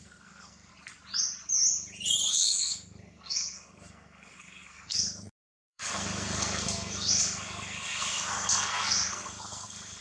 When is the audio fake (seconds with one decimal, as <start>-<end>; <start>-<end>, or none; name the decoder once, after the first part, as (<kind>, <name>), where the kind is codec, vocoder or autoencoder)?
0.0-0.7 (codec, SNAC); 2.3-10.0